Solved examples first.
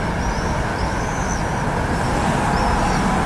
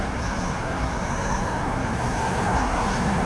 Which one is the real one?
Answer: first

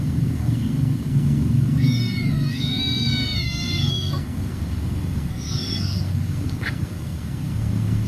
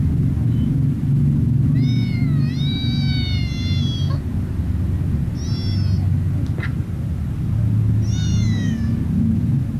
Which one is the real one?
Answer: second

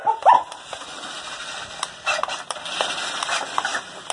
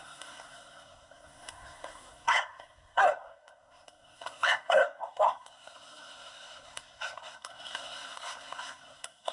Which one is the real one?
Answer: first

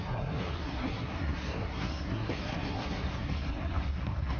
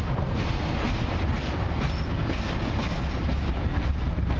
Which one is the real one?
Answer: second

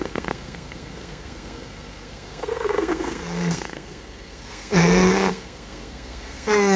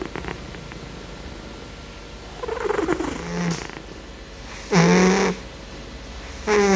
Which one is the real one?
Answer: second